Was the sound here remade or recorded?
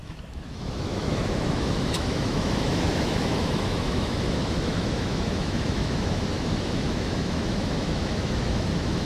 remade